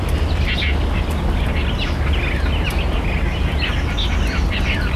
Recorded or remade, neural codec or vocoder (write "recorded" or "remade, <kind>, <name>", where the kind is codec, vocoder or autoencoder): recorded